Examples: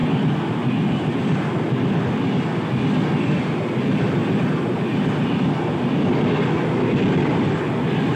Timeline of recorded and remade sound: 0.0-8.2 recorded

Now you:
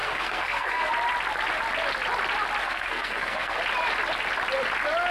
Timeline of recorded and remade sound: 0.0-0.9 remade; 0.9-2.6 recorded; 2.6-3.6 remade; 3.6-5.1 recorded

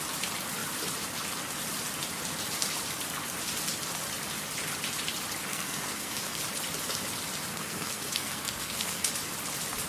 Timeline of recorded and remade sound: 0.0-5.5 recorded; 5.5-6.4 remade; 6.4-7.5 recorded; 7.5-9.1 remade; 9.1-9.9 recorded

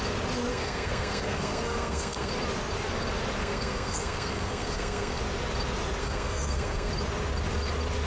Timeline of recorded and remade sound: 0.0-0.5 recorded; 0.5-2.3 remade; 2.3-3.4 recorded; 3.4-5.2 remade; 5.2-6.0 recorded; 6.0-6.9 remade; 6.9-8.1 recorded

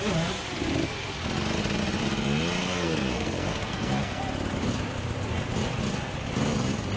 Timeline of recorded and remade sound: 0.0-2.6 recorded; 2.6-4.2 remade; 4.2-7.0 recorded

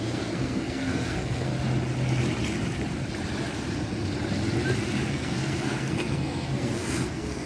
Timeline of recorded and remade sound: 0.0-1.5 remade; 1.5-5.1 recorded; 5.1-7.5 remade

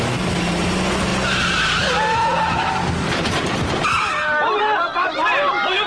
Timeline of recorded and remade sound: 0.0-5.9 recorded

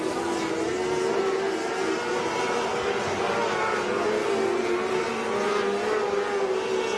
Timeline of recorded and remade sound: 0.0-7.0 recorded